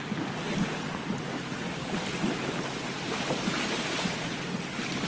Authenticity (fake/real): real